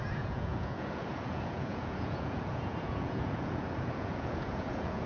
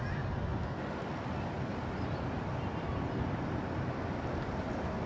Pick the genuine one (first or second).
second